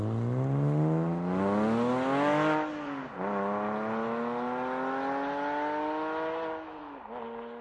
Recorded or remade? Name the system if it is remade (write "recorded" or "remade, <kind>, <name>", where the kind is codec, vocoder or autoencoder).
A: recorded